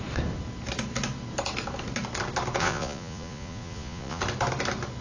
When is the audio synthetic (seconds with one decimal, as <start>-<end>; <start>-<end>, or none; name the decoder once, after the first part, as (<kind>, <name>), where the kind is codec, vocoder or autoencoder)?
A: 2.6-4.2 (vocoder, Vocos)

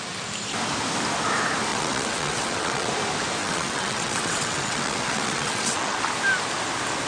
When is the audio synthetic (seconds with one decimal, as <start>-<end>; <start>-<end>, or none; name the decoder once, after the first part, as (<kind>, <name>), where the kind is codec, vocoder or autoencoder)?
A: 1.7-2.9 (vocoder, WaveNeXt); 3.4-6.0

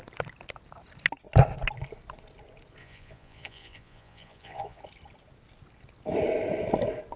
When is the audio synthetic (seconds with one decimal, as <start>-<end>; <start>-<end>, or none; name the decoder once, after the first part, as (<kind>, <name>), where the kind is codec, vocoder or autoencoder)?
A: 2.8-4.8 (vocoder, Vocos)

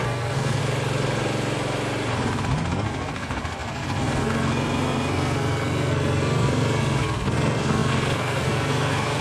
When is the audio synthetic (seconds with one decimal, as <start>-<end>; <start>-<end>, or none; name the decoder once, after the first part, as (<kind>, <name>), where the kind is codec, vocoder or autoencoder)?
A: 0.0-0.6 (codec, SNAC); 2.7-9.2

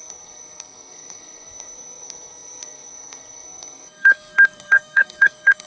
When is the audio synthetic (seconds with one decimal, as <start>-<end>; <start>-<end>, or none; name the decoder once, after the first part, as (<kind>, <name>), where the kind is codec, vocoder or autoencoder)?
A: 0.0-5.7 (codec, SNAC)

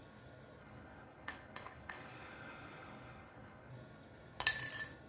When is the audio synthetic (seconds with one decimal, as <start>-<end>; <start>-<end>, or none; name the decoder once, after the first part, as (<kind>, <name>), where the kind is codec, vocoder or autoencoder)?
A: 0.6-3.7 (codec, HILCodec)